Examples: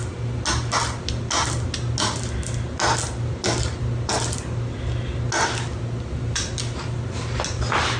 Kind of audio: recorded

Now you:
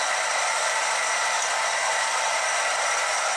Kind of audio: remade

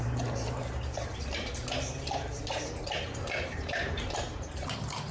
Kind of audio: remade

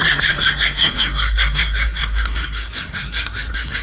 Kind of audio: remade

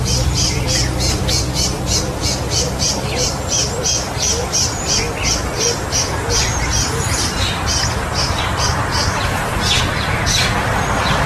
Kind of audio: remade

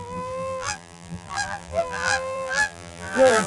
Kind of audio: remade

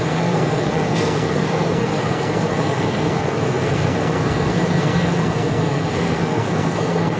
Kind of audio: remade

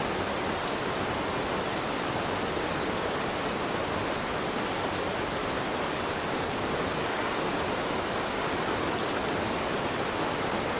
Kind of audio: remade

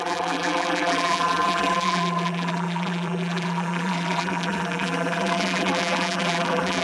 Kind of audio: remade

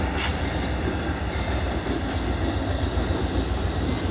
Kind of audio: recorded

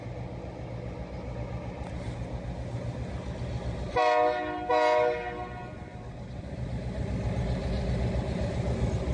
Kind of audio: recorded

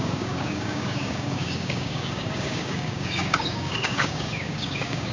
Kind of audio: remade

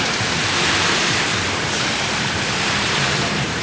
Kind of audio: remade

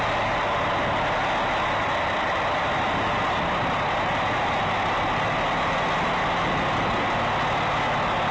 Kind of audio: recorded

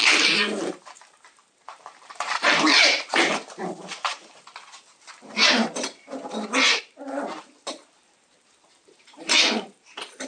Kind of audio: remade